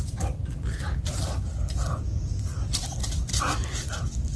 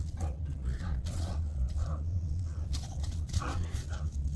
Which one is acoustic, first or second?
first